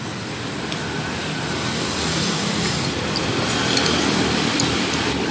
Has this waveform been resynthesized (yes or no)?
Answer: yes